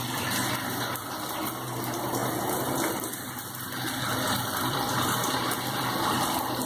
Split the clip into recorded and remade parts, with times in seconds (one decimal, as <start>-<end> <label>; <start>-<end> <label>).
0.0-2.2 remade; 2.2-4.4 recorded; 4.4-6.7 remade